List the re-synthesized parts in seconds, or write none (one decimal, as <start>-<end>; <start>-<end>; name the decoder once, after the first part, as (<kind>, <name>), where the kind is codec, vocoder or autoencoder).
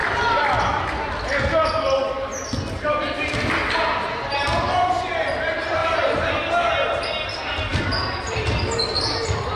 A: 5.8-6.3 (vocoder, BigVGAN v2); 7.7-8.4